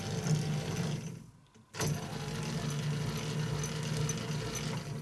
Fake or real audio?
real